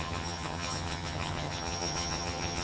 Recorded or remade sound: remade